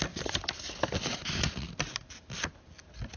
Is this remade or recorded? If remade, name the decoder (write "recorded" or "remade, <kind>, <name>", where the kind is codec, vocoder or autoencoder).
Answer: recorded